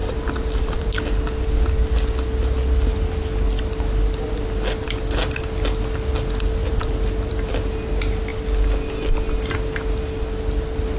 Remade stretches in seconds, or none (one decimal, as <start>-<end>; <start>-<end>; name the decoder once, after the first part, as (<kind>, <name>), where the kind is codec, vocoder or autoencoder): 0.0-1.1 (vocoder, BigVGAN v2); 6.6-7.5